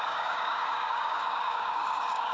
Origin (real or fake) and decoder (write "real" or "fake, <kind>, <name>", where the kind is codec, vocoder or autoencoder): fake, codec, DAC